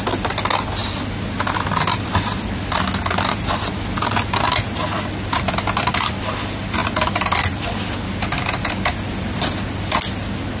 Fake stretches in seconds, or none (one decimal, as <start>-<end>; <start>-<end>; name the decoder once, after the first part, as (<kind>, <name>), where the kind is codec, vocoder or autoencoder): none